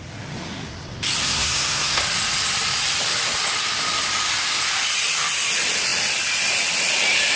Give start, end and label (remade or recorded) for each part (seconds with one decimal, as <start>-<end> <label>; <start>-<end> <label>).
0.0-1.2 recorded; 1.2-2.0 remade; 2.0-7.3 recorded